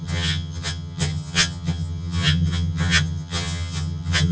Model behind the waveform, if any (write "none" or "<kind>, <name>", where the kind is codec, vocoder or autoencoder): vocoder, HiFi-GAN